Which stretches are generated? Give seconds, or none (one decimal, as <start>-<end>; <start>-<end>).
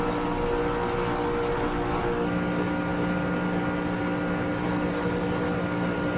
none